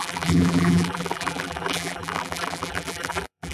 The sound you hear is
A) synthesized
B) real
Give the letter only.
A